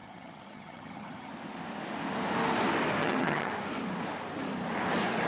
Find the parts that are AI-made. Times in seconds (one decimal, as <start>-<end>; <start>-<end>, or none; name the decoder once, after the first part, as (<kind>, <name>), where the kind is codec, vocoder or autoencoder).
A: 0.0-1.3 (vocoder, HiFi-GAN); 3.0-3.5